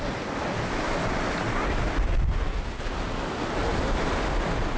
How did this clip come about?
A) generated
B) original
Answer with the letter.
B